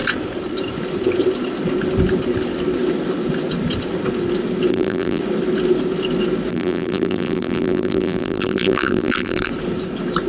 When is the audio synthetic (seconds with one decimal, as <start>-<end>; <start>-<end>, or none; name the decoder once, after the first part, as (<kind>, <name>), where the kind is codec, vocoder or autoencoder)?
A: 4.7-5.2 (vocoder, BigVGAN v2); 6.5-9.5